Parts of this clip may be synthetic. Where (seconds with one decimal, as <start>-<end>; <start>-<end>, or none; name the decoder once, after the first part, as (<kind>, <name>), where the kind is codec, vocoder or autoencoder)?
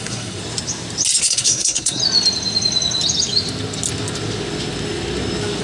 0.0-0.4 (codec, SNAC); 1.2-2.0